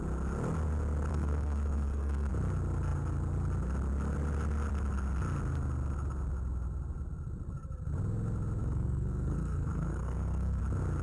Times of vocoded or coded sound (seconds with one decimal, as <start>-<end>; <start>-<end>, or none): 1.1-2.3; 8.6-10.6